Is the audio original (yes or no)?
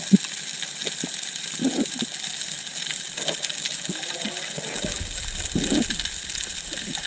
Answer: yes